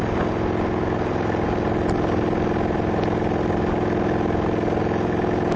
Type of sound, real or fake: real